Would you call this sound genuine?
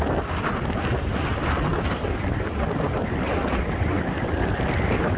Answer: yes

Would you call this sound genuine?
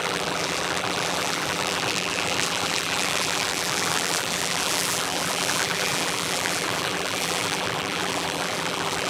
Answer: no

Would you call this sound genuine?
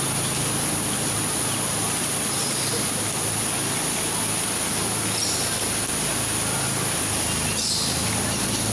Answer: yes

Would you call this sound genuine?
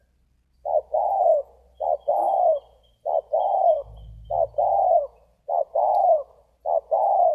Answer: no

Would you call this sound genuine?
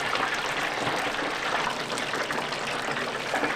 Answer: yes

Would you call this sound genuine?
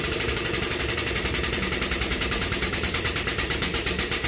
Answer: no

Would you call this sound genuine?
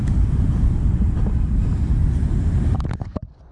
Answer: no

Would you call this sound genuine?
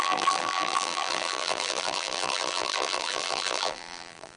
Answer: no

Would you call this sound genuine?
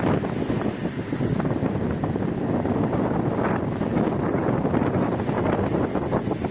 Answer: yes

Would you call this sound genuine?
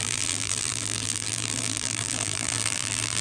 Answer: no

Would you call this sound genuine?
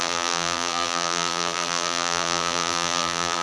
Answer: no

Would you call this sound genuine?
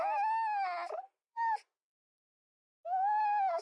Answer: yes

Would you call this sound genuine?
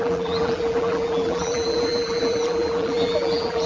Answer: no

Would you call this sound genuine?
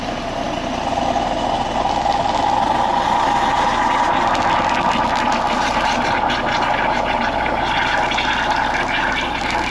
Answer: yes